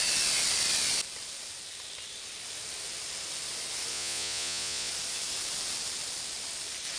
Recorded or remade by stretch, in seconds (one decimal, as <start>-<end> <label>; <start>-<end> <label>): 0.0-3.9 recorded; 3.9-4.9 remade; 4.9-7.0 recorded

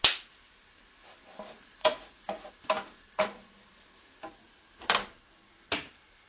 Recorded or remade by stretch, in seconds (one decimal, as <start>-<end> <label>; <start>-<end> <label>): 0.0-1.8 recorded; 1.8-2.5 remade; 2.5-6.3 recorded

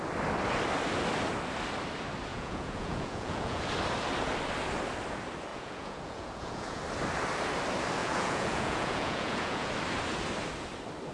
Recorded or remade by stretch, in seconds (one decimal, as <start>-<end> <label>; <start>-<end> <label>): 0.0-2.3 recorded; 2.3-3.6 remade; 3.6-5.5 recorded; 5.5-6.8 remade; 6.8-8.0 recorded; 8.0-9.7 remade; 9.7-11.1 recorded